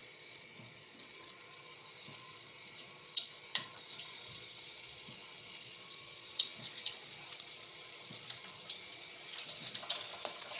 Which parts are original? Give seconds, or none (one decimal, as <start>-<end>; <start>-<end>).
none

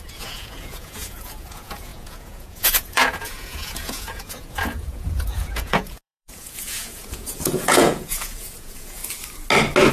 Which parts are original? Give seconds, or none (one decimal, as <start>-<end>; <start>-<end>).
9.0-9.9

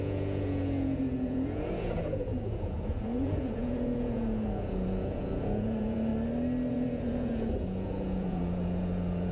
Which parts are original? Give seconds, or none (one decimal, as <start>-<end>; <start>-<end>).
6.1-6.7

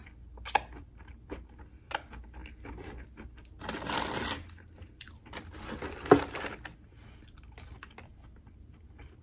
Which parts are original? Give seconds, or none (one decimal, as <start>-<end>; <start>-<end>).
0.0-9.2

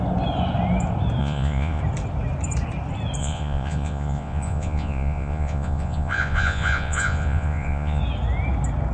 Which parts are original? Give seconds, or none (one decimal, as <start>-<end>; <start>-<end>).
0.0-1.2; 1.8-3.2; 8.0-8.9

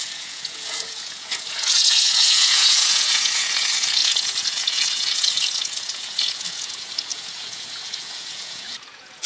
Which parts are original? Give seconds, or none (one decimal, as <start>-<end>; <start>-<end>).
none

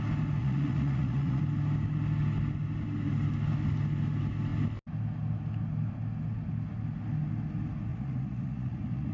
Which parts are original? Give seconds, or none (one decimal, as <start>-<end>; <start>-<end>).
0.0-0.4; 1.4-7.9

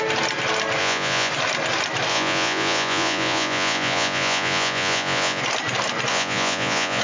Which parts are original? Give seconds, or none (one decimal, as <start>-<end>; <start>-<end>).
0.0-0.8; 1.3-2.1; 5.4-6.1